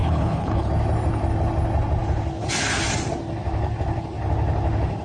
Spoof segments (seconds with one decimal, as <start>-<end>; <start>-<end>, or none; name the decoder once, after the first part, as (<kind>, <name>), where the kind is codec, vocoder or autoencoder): 0.0-0.7 (codec, HILCodec)